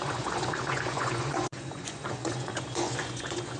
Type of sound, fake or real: fake